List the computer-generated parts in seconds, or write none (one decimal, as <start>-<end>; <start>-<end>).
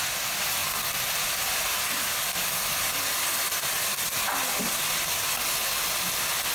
none